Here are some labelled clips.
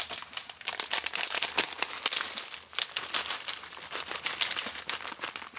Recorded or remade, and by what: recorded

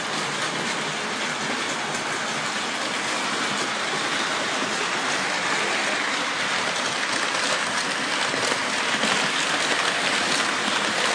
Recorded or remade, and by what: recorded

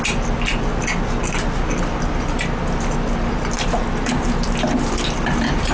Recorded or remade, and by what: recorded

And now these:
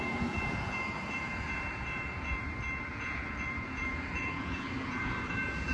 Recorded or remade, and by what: remade, vocoder, Vocos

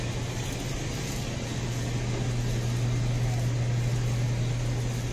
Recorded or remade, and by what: recorded